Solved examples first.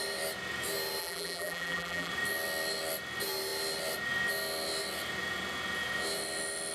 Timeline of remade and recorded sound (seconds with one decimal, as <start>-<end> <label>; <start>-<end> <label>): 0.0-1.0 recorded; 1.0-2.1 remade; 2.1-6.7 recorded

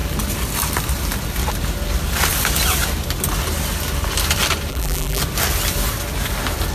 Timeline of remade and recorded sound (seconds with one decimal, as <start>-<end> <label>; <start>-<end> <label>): 0.0-4.7 recorded; 4.7-5.2 remade; 5.2-6.7 recorded

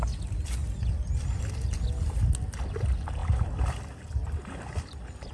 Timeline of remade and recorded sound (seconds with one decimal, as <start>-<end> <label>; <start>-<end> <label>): 0.0-3.2 recorded; 3.2-5.3 remade

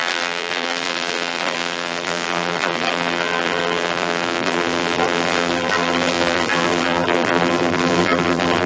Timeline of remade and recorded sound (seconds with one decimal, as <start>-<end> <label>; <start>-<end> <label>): 0.0-8.7 remade

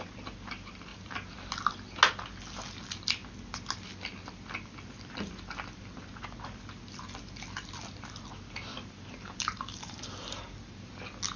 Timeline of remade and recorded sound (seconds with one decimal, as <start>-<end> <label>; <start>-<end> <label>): 0.0-0.9 recorded; 0.9-1.5 remade; 1.5-8.7 recorded; 8.7-10.7 remade; 10.7-11.4 recorded